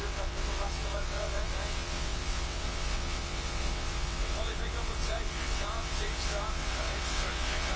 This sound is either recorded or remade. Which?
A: remade